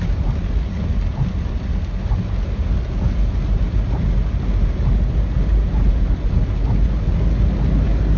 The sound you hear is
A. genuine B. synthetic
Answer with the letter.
A